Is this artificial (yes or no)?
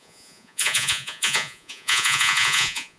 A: yes